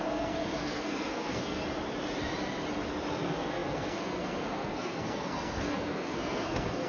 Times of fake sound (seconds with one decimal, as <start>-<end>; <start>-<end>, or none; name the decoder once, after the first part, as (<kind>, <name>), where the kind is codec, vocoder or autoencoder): 0.0-1.6 (codec, SNAC); 3.1-6.9